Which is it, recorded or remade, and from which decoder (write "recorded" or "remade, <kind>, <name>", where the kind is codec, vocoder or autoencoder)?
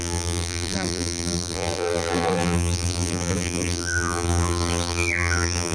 remade, vocoder, BigVGAN v2